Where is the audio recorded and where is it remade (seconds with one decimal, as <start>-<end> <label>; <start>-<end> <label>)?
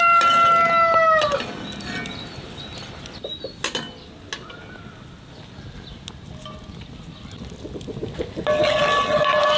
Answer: 0.0-9.6 recorded